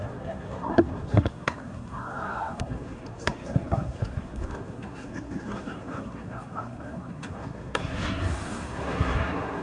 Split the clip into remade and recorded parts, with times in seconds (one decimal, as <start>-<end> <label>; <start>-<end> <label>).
0.0-9.6 remade